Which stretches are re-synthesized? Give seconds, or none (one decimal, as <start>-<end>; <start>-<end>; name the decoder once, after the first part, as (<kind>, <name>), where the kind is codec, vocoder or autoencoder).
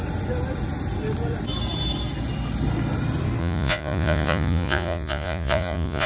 3.4-6.1 (vocoder, Vocos)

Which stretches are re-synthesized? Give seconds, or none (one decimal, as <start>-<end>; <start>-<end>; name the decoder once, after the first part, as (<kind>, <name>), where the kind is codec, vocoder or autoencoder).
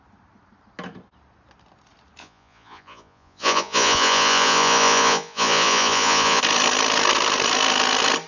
2.2-6.4 (vocoder, Vocos)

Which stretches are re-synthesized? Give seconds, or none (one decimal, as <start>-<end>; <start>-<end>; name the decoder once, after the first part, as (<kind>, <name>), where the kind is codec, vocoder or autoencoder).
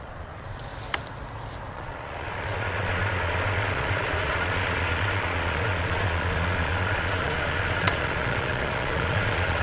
0.0-0.7 (vocoder, Vocos); 1.7-9.6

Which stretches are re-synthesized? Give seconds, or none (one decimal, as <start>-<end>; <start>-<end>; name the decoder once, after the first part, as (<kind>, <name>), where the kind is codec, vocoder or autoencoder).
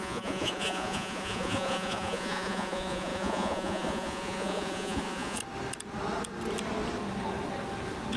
0.0-5.4 (vocoder, Vocos)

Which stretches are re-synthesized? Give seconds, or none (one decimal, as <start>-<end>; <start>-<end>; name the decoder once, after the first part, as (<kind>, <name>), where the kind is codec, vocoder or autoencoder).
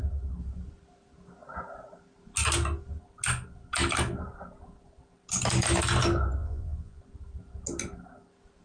6.4-7.0 (vocoder, Vocos)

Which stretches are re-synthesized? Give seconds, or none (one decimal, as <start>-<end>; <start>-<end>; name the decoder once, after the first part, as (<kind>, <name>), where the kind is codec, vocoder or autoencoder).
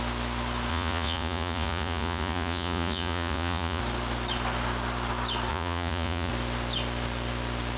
0.7-3.8 (vocoder, Vocos); 5.5-6.3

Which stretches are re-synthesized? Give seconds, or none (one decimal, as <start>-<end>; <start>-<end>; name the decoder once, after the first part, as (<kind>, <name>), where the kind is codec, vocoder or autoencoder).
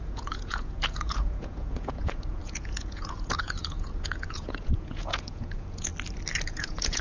0.0-5.9 (vocoder, Vocos); 6.5-7.0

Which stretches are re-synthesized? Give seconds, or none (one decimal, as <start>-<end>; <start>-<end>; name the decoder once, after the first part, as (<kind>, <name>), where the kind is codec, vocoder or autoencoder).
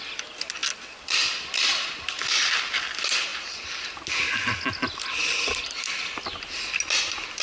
none